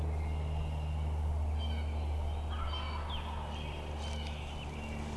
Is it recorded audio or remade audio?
recorded